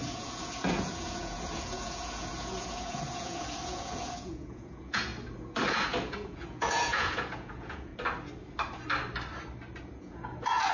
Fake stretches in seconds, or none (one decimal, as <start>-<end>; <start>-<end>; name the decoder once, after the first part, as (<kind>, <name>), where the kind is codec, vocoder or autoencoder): 0.0-5.1 (vocoder, Vocos); 5.7-7.9; 9.8-10.7